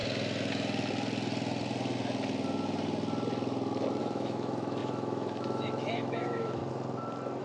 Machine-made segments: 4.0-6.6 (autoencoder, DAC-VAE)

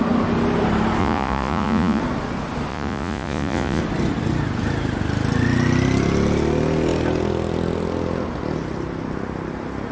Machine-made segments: 1.0-2.0 (vocoder, Vocos); 2.7-3.8